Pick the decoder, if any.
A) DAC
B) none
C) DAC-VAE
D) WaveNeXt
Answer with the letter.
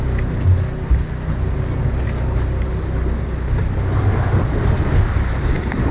B